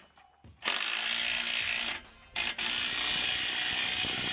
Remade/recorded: recorded